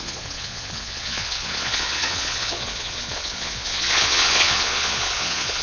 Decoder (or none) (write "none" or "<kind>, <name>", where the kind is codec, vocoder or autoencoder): vocoder, Vocos